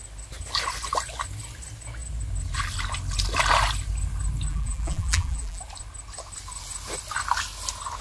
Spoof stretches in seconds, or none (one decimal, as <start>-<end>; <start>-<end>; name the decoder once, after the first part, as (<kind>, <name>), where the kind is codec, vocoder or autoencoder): 4.5-5.6 (vocoder, BigVGAN v2)